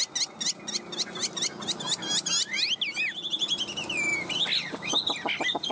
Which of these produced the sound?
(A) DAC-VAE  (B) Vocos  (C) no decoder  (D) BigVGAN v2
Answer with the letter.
C